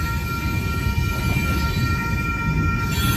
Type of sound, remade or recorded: recorded